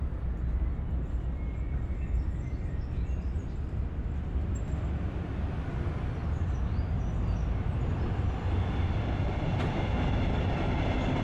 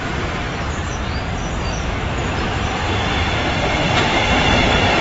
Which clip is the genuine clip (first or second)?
first